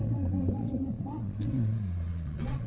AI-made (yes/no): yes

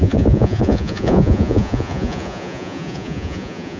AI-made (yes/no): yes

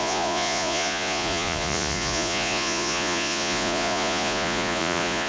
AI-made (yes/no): yes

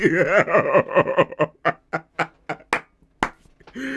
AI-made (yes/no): no